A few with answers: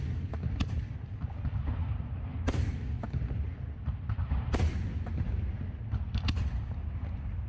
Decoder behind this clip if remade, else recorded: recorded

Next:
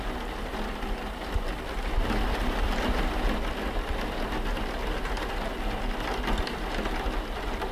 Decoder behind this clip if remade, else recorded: recorded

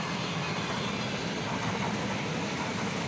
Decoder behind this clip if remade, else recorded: recorded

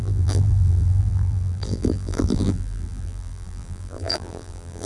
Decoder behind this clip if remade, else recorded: remade, vocoder, BigVGAN v2